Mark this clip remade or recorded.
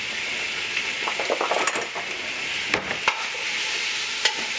recorded